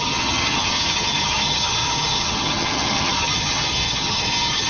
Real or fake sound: fake